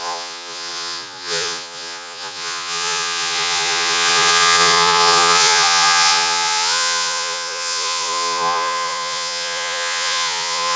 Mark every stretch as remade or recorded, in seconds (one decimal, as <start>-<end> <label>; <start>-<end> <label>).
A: 0.0-10.8 remade